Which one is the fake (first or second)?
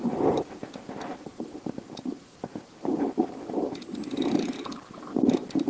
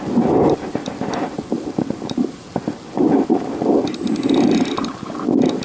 first